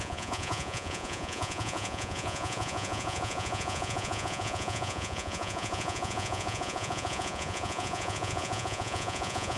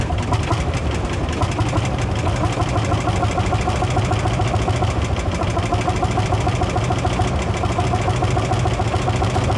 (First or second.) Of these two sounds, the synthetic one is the first